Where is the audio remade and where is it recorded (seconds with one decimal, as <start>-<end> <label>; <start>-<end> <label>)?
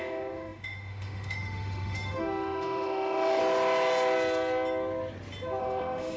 0.0-3.4 remade; 3.4-5.6 recorded; 5.6-6.2 remade